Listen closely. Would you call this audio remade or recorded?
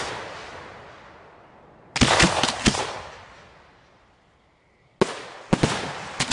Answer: recorded